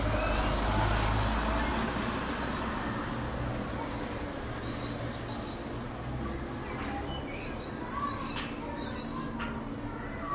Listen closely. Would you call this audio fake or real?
real